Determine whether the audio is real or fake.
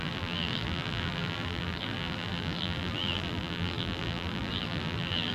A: fake